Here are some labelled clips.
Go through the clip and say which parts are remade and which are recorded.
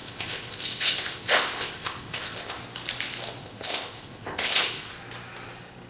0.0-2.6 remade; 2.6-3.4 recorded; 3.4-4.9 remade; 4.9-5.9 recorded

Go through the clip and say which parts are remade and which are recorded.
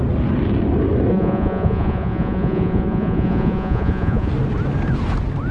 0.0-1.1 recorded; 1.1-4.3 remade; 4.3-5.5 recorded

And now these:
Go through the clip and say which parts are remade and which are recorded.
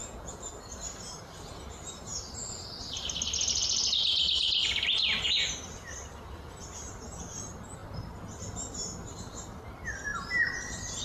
0.0-0.5 remade; 0.5-11.0 recorded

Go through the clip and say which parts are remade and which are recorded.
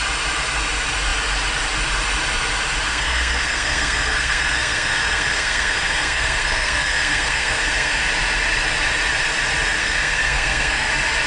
0.0-2.9 recorded; 2.9-8.1 remade; 8.1-9.8 recorded; 9.8-10.9 remade; 10.9-11.3 recorded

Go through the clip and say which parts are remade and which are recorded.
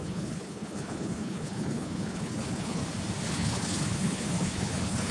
0.0-2.8 remade; 2.8-3.3 recorded; 3.3-5.1 remade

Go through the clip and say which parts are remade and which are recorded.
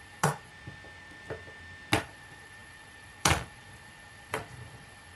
0.0-0.5 remade; 0.5-2.0 recorded; 2.0-5.2 remade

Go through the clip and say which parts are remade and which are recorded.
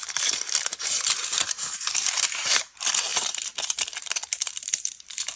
0.0-5.4 remade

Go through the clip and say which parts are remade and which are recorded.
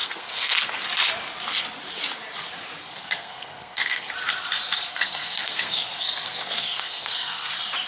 0.0-0.8 remade; 0.8-2.8 recorded; 2.8-4.1 remade; 4.1-4.9 recorded; 4.9-7.5 remade; 7.5-7.9 recorded